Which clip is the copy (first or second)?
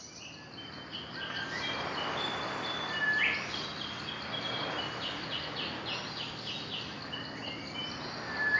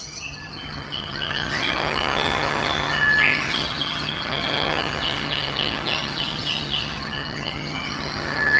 second